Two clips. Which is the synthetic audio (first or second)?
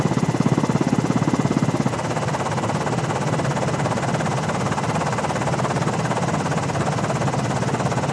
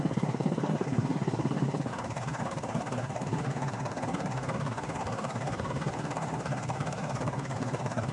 second